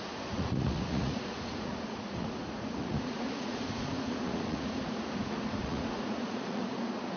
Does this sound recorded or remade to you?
remade